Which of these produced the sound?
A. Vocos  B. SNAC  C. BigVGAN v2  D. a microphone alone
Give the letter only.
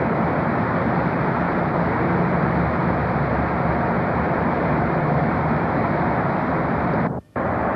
C